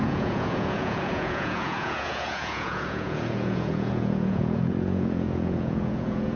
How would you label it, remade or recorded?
remade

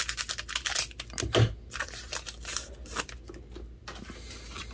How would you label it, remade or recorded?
recorded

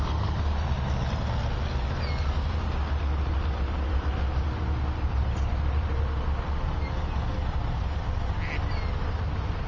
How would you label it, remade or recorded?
recorded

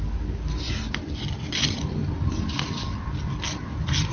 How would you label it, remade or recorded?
recorded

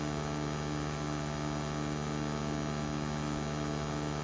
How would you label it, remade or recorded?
recorded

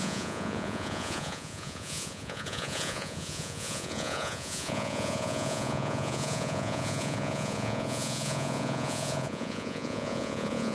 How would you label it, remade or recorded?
remade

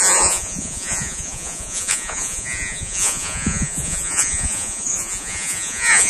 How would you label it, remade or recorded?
remade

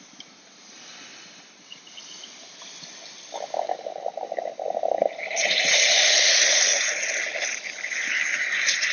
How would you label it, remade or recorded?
recorded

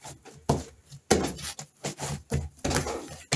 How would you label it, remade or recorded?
recorded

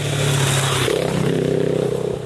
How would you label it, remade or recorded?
recorded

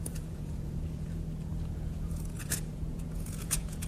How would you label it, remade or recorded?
remade